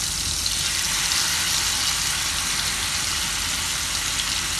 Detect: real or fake real